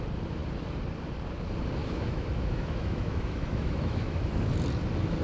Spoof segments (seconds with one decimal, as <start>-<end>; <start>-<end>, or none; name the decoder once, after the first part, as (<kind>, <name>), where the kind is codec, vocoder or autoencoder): 1.8-4.5 (autoencoder, DAC-VAE)